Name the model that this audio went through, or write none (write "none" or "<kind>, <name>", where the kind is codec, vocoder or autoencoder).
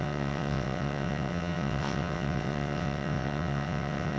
vocoder, WaveNeXt